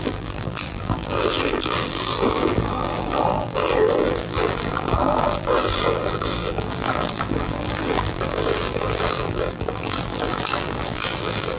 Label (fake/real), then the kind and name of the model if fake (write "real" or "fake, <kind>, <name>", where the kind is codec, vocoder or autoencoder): fake, vocoder, BigVGAN v2